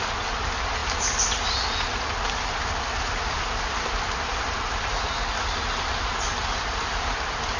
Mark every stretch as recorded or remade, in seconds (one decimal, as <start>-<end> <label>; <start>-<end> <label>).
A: 0.0-7.6 recorded